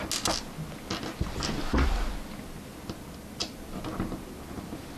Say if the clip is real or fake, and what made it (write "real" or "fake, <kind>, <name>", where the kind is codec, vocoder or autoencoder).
real